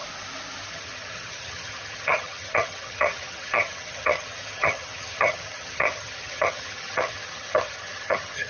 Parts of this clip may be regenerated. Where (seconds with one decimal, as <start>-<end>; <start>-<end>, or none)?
0.7-8.5